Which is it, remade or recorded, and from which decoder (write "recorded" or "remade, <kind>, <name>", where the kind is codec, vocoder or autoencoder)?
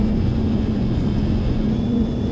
remade, vocoder, Vocos